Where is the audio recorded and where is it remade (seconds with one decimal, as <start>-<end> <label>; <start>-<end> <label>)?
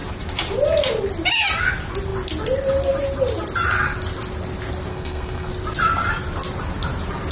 0.0-4.9 recorded; 4.9-5.5 remade; 5.5-7.3 recorded